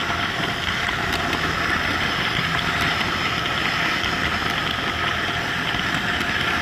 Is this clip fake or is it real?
real